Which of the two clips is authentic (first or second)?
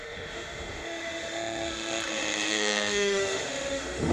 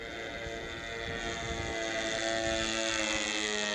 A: second